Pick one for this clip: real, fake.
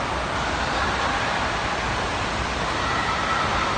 real